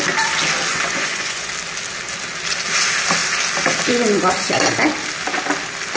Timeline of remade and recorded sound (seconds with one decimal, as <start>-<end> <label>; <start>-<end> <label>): 0.0-0.7 recorded; 0.7-1.5 remade; 1.5-6.0 recorded